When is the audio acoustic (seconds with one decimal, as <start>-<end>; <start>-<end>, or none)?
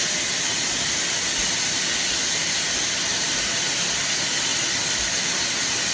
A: 0.0-5.9